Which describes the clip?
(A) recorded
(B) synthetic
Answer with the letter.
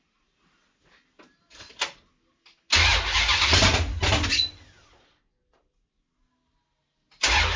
A